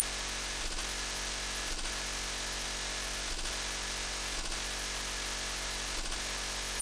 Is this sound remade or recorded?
remade